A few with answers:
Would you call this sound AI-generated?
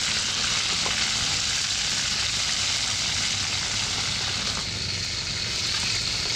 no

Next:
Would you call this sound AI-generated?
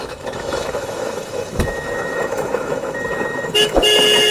yes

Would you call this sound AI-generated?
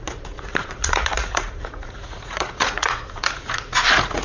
yes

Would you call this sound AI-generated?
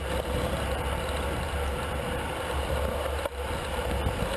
no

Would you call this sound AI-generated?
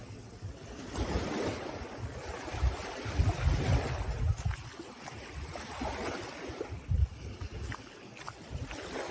no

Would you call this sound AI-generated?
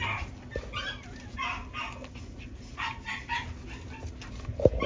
no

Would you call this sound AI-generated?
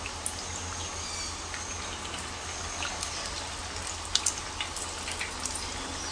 no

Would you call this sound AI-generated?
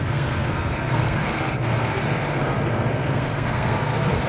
yes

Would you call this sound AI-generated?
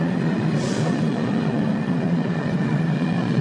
yes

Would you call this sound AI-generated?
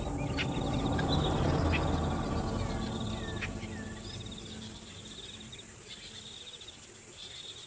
no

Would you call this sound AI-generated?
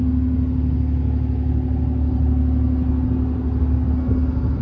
no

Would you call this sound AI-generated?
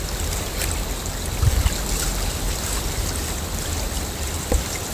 no